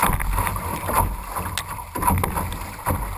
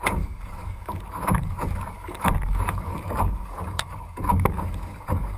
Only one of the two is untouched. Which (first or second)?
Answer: first